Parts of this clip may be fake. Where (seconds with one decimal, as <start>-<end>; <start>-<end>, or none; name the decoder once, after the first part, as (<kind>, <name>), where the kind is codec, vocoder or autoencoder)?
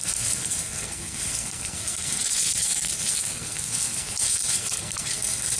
0.0-5.6 (codec, SNAC)